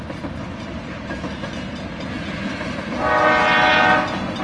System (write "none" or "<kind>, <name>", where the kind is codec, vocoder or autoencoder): none